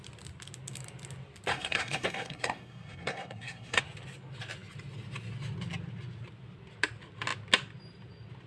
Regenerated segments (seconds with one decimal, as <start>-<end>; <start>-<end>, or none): 1.5-3.8